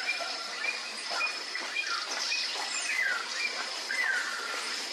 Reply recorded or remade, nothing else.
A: remade